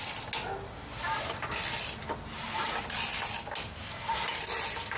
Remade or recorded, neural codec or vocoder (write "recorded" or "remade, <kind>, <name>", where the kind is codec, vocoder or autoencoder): recorded